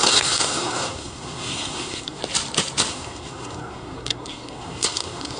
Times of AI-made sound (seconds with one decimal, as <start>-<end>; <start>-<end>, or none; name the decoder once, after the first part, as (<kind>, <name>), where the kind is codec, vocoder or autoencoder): 0.0-2.2 (codec, SNAC); 2.9-5.4